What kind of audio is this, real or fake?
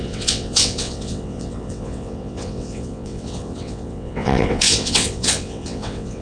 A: fake